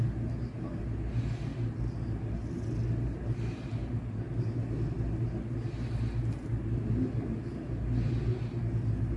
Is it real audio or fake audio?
real